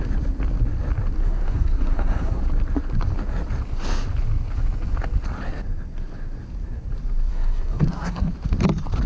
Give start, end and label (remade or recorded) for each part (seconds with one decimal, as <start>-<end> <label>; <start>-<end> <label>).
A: 0.0-1.2 recorded; 1.2-2.4 remade; 2.4-7.3 recorded; 7.3-8.3 remade; 8.3-9.1 recorded